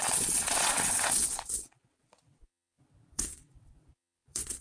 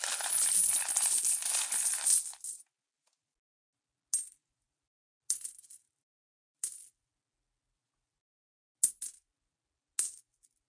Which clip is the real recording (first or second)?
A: second